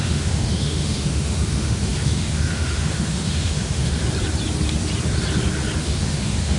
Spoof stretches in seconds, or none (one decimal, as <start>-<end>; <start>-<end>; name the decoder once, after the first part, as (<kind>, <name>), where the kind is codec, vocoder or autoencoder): 0.0-4.0 (autoencoder, DAC-VAE); 5.8-6.6